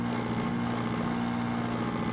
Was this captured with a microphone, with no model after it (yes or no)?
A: yes